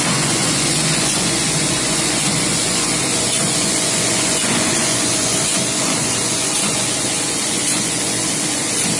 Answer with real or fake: fake